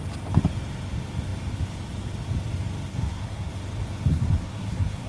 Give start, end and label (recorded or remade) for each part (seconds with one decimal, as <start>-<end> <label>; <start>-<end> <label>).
0.0-2.9 recorded; 2.9-3.5 remade; 3.5-4.1 recorded; 4.1-5.1 remade

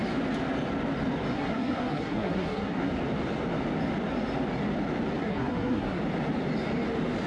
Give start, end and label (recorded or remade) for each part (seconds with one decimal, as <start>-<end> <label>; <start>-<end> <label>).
0.0-1.3 recorded; 1.3-2.9 remade; 2.9-5.2 recorded; 5.2-6.0 remade; 6.0-7.3 recorded